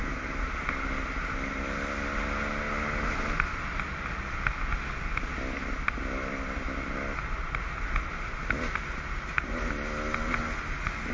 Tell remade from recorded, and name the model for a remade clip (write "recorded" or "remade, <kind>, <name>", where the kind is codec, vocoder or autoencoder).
recorded